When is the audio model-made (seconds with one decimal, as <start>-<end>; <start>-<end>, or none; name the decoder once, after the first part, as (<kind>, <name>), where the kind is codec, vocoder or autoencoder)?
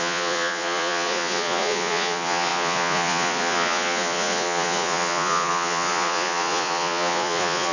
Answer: 0.0-7.7 (vocoder, Vocos)